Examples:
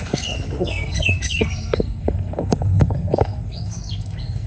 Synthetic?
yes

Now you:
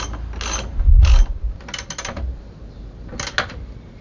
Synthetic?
no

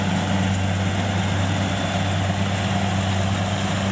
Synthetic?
no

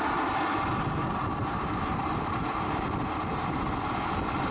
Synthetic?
no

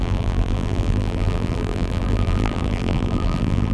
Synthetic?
yes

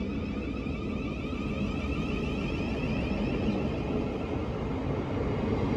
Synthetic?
no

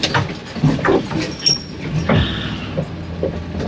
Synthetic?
no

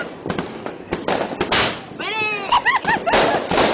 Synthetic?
no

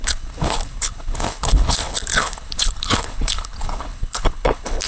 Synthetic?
yes